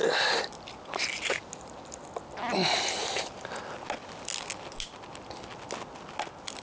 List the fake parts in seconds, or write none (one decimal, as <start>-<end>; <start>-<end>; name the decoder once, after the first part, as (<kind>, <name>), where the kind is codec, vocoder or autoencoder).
none